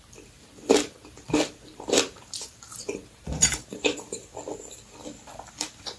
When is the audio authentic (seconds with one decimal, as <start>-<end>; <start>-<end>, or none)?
4.3-5.5